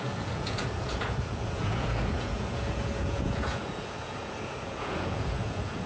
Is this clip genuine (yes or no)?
no